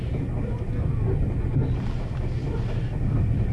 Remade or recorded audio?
recorded